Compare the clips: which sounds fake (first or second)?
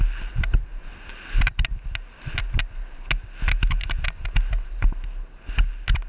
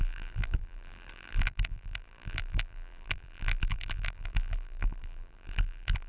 second